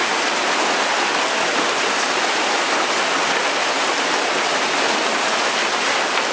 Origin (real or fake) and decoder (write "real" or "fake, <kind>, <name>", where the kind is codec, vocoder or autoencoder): real